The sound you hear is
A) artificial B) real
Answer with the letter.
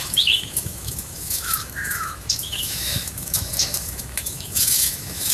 A